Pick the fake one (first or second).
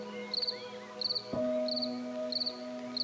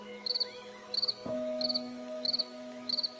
second